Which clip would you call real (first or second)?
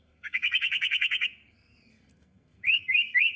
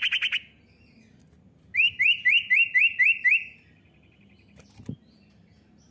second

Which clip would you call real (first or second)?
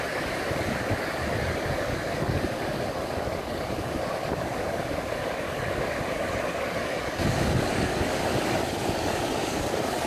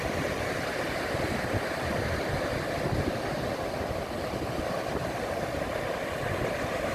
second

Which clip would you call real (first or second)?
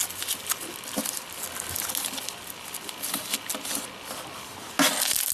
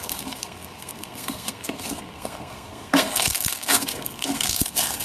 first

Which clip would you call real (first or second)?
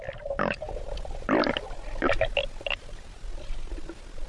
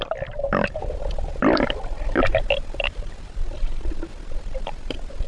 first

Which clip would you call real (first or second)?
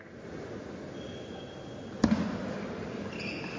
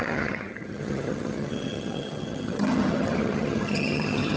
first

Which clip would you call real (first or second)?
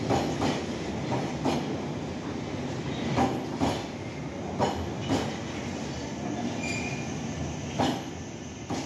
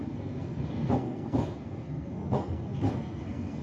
first